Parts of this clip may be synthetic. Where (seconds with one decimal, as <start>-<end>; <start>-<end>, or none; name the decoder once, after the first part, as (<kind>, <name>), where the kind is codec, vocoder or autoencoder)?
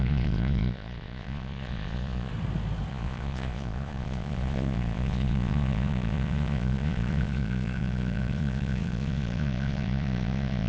0.0-2.3 (vocoder, Vocos); 2.9-10.7